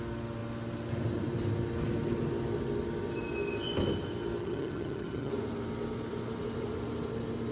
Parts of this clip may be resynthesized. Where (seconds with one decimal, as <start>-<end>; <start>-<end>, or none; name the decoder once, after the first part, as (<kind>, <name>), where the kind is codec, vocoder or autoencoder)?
4.4-5.3 (vocoder, HiFi-GAN)